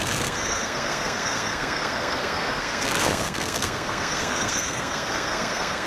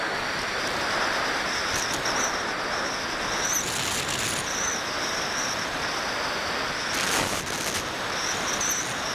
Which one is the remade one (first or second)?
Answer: first